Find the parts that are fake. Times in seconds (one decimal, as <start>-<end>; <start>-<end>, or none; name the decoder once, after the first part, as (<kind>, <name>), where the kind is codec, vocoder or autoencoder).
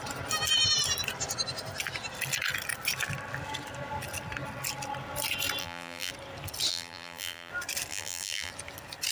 5.6-6.1 (vocoder, BigVGAN v2); 6.7-7.5; 7.9-8.5